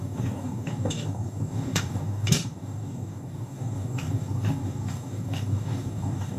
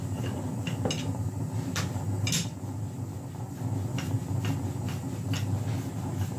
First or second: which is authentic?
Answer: second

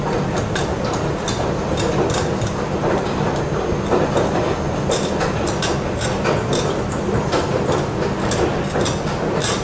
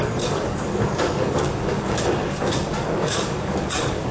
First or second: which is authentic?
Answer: first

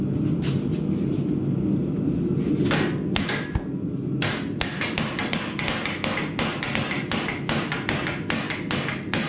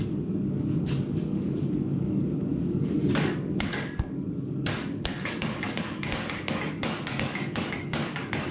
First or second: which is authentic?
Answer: first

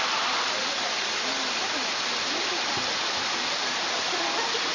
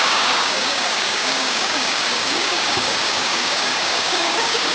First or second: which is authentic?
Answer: first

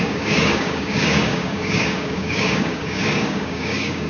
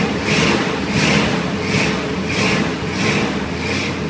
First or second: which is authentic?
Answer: second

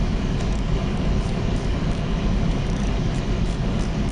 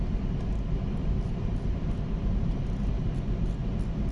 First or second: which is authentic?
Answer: second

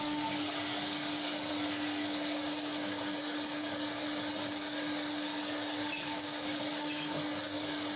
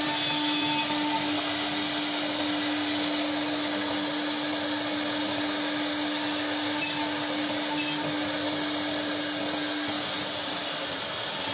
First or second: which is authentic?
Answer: second